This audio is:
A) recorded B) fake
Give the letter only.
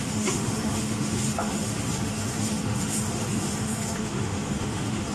B